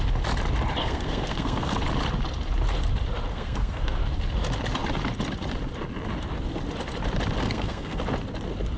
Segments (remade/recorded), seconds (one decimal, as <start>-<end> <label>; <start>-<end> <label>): 0.0-0.8 recorded; 0.8-1.8 remade; 1.8-3.3 recorded; 3.3-4.0 remade; 4.0-7.4 recorded; 7.4-8.0 remade; 8.0-8.8 recorded